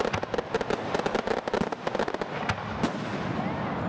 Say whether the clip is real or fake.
real